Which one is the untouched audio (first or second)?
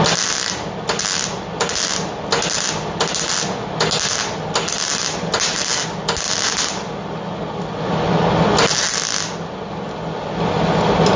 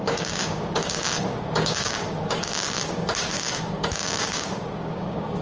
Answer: first